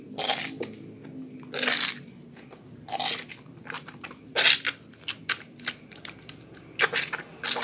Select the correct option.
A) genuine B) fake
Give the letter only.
A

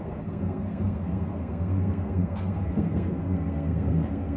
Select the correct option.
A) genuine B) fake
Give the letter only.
B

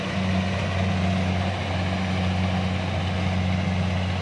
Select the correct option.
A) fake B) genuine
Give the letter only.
B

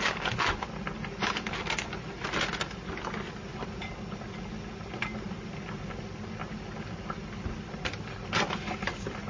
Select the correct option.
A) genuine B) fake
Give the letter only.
A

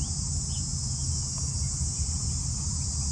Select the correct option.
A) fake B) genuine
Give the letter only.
B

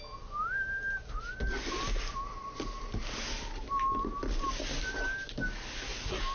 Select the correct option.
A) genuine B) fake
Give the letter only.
A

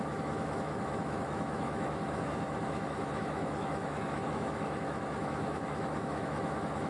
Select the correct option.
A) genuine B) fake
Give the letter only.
B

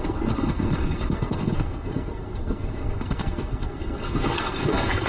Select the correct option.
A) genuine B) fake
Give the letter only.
B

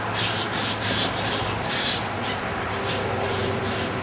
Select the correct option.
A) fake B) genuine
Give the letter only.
B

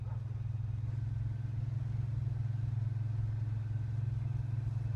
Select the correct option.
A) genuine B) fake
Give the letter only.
A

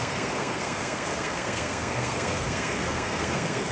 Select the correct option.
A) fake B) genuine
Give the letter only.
A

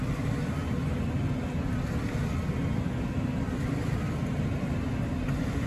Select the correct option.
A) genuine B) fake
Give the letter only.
A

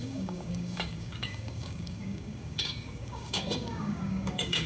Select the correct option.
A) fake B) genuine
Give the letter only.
A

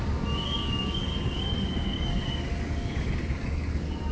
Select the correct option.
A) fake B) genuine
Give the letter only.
A